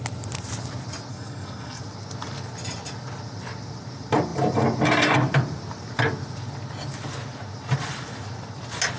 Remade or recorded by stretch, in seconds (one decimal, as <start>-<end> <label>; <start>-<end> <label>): 0.0-1.1 recorded; 1.1-1.8 remade; 1.8-9.0 recorded